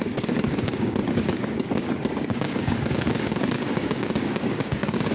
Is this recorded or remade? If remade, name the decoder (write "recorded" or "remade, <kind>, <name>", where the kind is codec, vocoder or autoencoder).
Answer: remade, codec, DAC